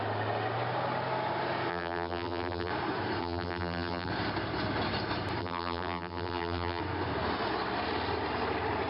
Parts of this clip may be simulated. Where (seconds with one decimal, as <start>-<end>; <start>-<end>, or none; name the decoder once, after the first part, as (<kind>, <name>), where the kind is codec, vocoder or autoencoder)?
1.7-2.7 (vocoder, BigVGAN v2); 3.2-4.1; 5.4-6.8